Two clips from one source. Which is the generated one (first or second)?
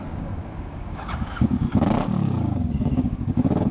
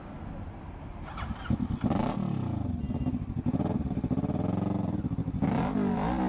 first